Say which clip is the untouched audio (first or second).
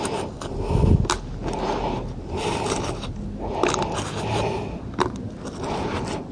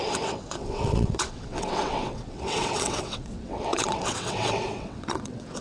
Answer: first